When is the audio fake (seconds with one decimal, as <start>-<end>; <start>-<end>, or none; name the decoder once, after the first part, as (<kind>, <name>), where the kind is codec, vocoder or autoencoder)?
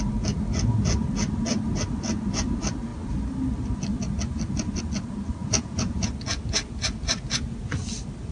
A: 5.4-6.1 (vocoder, Vocos)